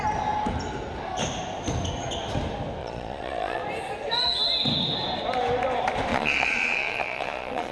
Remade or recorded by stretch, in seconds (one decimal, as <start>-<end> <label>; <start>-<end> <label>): 0.0-2.8 recorded; 2.8-3.6 remade; 3.6-6.1 recorded; 6.1-7.7 remade